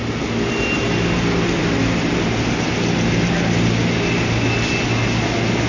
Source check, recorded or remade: recorded